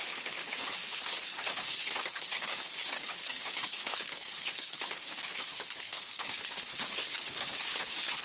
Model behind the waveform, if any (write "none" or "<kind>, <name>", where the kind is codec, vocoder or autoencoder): codec, HILCodec